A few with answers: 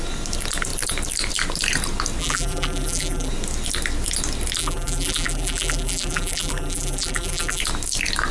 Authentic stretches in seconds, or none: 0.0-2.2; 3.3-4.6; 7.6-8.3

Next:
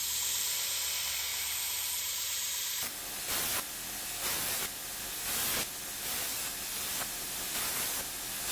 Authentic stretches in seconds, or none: 0.0-1.3; 3.0-6.3; 7.6-8.5

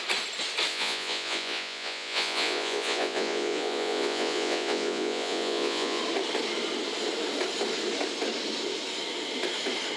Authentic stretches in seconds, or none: 0.0-0.7; 6.0-10.0

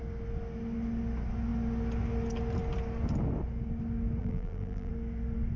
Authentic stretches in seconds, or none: 0.0-4.2; 4.9-5.6

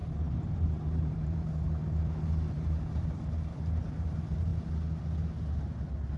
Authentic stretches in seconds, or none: 4.5-6.2

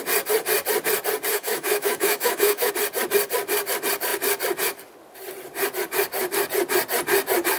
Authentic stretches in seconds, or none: 0.0-1.3; 2.7-7.6